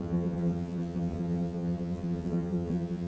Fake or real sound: fake